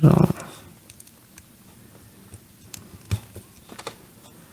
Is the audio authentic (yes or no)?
yes